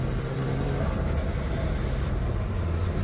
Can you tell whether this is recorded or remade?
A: recorded